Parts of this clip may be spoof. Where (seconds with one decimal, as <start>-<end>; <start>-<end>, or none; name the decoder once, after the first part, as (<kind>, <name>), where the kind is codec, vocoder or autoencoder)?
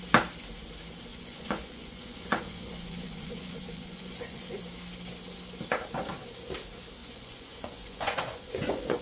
1.1-4.6 (vocoder, Vocos); 7.0-9.0